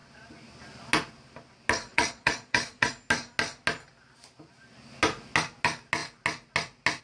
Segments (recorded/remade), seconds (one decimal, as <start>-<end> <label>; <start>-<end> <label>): 0.0-1.9 recorded; 1.9-2.9 remade; 2.9-7.0 recorded